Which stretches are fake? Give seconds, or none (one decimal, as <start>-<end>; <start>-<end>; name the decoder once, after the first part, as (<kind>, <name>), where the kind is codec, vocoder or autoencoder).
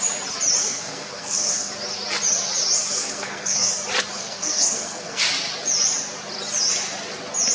0.6-1.7 (codec, SNAC); 2.9-3.7; 4.2-5.2